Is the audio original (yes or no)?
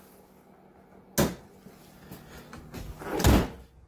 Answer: yes